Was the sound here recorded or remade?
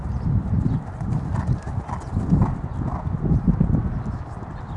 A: recorded